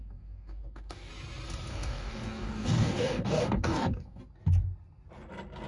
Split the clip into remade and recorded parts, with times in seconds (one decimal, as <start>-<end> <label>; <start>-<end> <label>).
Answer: 0.0-1.1 remade; 1.1-1.7 recorded; 1.7-4.2 remade; 4.2-5.7 recorded